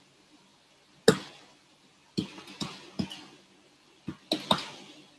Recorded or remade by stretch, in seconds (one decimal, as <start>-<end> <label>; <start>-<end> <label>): 0.0-0.5 remade; 0.5-1.5 recorded; 1.5-2.0 remade; 2.0-5.2 recorded